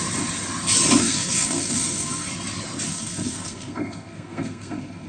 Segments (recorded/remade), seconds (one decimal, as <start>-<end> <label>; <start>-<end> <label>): 0.0-1.0 recorded; 1.0-2.3 remade; 2.3-2.9 recorded; 2.9-5.1 remade